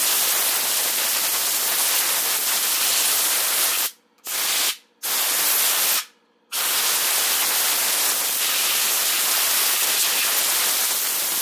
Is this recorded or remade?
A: recorded